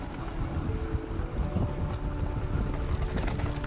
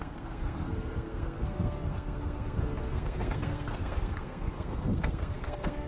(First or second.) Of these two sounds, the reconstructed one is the second